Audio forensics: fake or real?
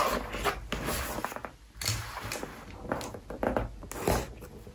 real